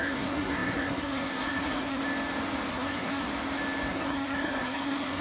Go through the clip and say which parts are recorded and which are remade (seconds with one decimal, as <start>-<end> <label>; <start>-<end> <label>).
0.0-2.0 remade; 2.0-2.7 recorded; 2.7-3.3 remade; 3.3-3.9 recorded; 3.9-5.2 remade